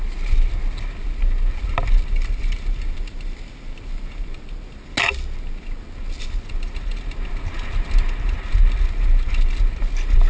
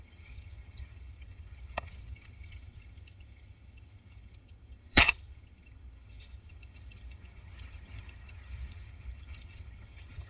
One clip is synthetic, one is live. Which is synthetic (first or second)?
second